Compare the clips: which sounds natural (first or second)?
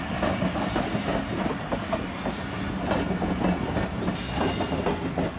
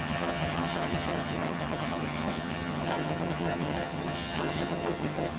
first